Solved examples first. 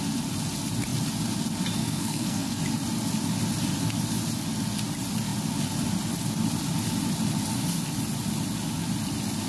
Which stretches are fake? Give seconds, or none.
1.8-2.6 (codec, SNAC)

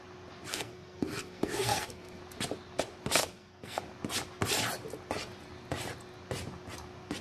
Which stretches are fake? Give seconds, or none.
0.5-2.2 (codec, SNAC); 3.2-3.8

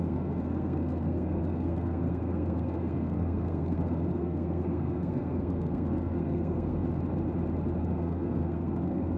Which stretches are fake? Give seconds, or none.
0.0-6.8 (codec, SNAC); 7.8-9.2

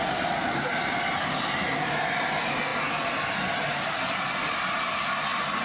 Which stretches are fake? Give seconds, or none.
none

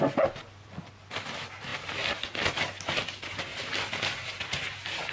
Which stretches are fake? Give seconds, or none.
none

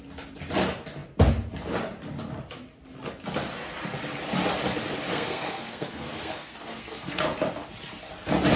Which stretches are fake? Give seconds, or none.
5.1-7.2 (codec, SNAC)